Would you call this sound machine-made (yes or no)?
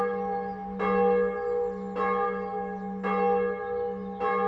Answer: no